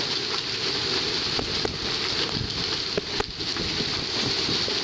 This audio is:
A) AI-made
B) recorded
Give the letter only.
B